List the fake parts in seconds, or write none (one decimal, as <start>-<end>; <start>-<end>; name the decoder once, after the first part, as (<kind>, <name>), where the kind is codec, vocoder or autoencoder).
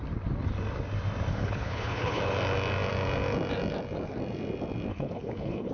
1.3-2.2 (codec, HILCodec); 4.9-5.7